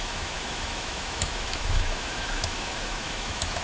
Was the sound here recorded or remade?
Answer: remade